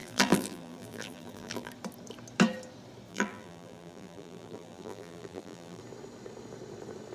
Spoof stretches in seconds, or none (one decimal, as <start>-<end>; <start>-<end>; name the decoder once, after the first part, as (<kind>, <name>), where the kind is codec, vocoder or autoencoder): 0.0-1.7 (vocoder, BigVGAN v2); 3.1-5.8